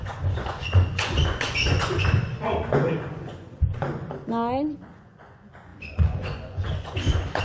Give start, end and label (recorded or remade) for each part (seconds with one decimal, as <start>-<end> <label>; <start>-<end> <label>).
0.0-7.4 remade